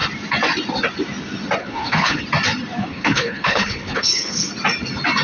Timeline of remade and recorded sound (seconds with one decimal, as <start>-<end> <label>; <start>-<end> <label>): 0.0-1.6 recorded; 1.6-2.2 remade; 2.2-2.8 recorded; 2.8-4.5 remade; 4.5-5.2 recorded